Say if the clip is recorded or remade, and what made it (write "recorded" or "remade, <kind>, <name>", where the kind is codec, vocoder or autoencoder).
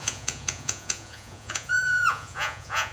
remade, vocoder, Vocos